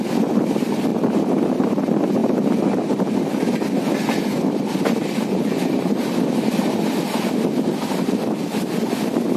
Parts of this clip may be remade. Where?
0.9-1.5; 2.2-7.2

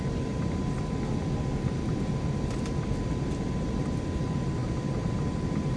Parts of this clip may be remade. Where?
none

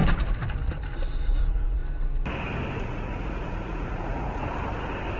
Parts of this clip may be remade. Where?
1.2-1.8; 2.8-4.4

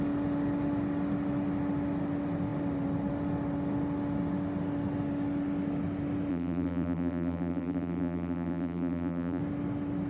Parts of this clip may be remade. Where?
6.3-9.4

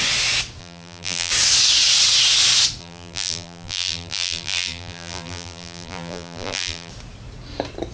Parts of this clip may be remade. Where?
0.6-1.3; 2.8-6.9